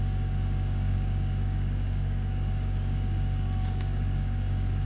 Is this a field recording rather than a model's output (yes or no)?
no